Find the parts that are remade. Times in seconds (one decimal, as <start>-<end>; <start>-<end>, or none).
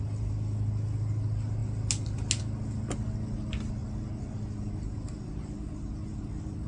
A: none